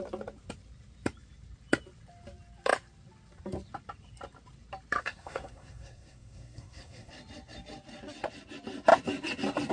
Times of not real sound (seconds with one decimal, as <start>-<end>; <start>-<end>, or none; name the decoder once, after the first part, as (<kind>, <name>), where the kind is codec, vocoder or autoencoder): 5.0-7.1 (codec, SNAC)